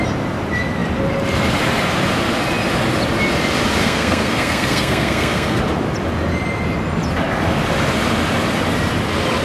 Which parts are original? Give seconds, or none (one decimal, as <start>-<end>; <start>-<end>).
0.0-3.8; 5.6-9.4